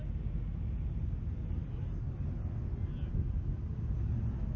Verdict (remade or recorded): recorded